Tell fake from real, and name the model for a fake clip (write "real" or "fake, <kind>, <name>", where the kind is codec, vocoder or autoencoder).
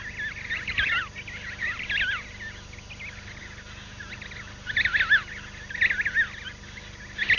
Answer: real